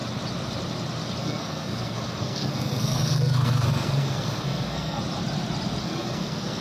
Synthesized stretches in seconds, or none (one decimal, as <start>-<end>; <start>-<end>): 1.2-5.0; 5.8-6.6